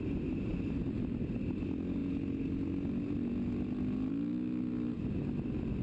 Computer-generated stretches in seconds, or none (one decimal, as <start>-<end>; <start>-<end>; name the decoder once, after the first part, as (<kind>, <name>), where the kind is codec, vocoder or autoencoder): none